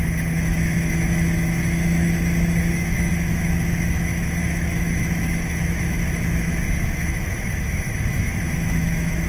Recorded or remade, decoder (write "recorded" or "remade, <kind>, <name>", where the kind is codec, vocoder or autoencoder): remade, autoencoder, DAC-VAE